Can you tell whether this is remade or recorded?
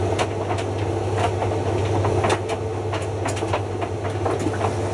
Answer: recorded